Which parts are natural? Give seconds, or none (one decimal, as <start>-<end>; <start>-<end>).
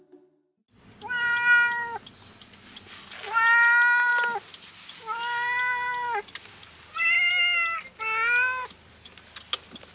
0.0-9.9